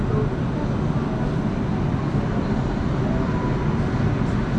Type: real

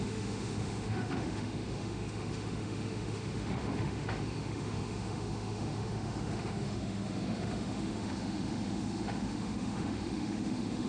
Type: fake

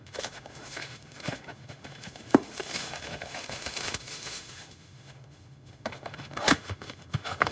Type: fake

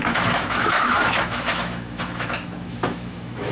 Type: fake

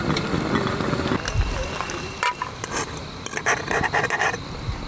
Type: real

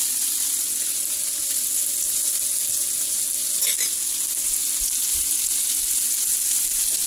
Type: real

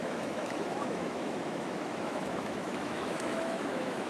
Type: fake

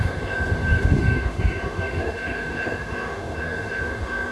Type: fake